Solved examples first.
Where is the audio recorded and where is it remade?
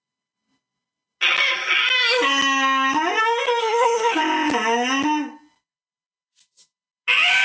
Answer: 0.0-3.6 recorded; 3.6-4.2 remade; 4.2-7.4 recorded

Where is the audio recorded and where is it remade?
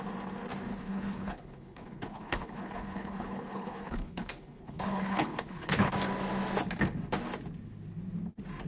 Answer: 0.0-0.7 recorded; 0.7-5.9 remade; 5.9-8.7 recorded